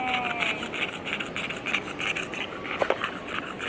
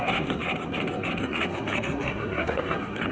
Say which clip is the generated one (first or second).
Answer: second